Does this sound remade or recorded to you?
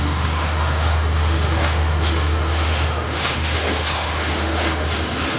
remade